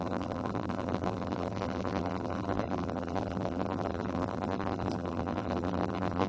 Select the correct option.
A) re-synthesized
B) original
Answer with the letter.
A